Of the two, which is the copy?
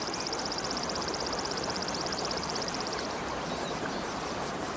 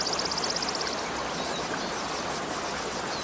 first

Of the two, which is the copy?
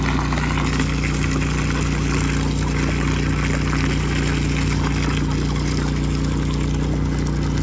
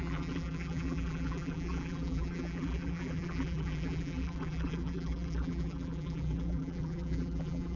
second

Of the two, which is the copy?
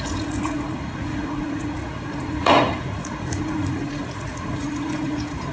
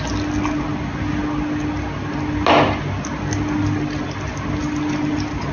first